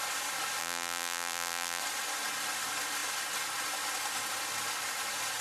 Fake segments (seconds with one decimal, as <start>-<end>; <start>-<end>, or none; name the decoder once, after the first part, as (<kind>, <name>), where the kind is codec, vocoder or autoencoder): 0.6-1.8 (vocoder, BigVGAN v2)